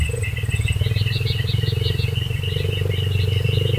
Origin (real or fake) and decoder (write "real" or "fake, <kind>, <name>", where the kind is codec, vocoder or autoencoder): real